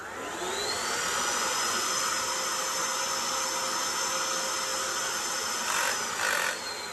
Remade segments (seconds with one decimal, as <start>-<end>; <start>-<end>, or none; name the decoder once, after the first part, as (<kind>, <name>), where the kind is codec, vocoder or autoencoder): 1.1-2.1 (vocoder, Vocos); 2.8-3.3